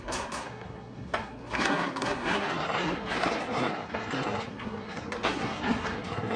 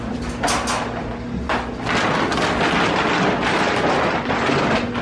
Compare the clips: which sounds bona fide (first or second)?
second